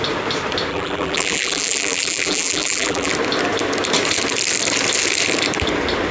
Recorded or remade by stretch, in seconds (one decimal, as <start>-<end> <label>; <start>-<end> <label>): 0.0-0.7 recorded; 0.7-3.1 remade; 3.1-6.1 recorded